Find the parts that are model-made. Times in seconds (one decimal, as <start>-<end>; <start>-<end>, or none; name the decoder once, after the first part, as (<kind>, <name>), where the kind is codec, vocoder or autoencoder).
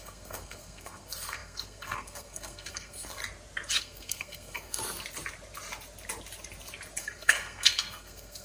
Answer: 0.0-3.2 (codec, SNAC); 3.8-4.8; 7.0-8.4